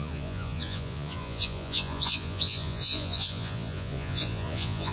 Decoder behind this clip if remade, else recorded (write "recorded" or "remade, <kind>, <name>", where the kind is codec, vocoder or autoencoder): remade, vocoder, Vocos